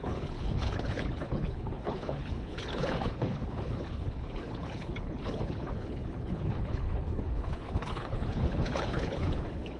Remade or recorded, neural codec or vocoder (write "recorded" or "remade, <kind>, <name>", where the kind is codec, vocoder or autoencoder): remade, codec, HILCodec